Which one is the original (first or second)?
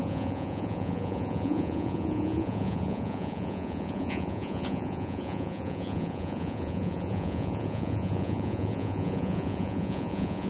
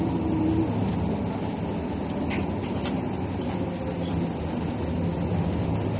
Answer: second